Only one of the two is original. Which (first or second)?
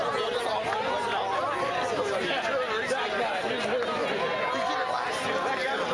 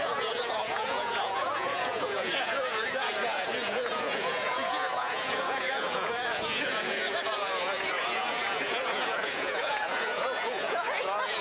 first